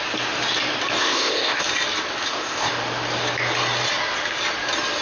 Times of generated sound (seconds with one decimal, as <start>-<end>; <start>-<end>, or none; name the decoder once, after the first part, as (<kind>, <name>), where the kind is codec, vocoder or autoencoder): 1.0-1.6 (codec, ZipCodec); 2.2-2.7